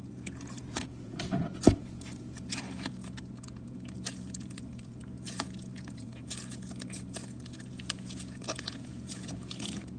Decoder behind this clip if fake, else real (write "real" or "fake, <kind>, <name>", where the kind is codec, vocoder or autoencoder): fake, vocoder, Vocos